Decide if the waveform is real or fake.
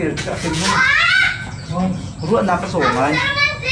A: fake